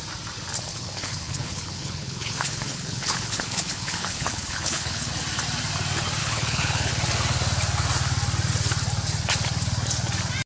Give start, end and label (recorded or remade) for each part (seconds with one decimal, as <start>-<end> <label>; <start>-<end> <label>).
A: 0.0-0.7 recorded; 0.7-5.1 remade; 5.1-6.2 recorded; 6.2-6.9 remade; 6.9-10.5 recorded